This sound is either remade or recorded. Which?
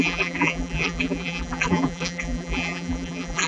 remade